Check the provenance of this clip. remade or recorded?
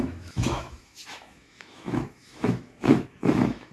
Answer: remade